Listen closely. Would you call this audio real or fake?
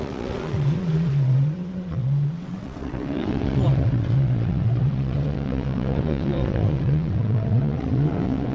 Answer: fake